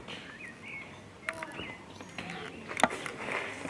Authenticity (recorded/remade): recorded